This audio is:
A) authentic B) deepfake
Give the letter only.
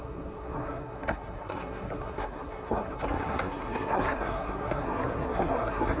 B